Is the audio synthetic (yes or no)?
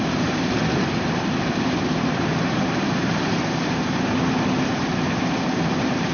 yes